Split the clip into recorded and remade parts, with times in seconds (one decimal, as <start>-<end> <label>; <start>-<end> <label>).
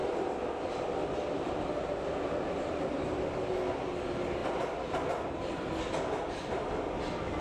0.0-7.4 recorded